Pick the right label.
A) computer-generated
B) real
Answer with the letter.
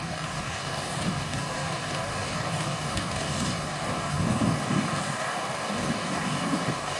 A